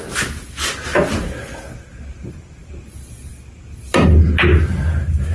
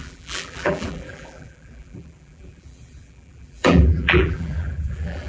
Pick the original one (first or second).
first